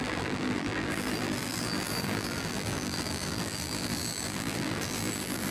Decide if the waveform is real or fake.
fake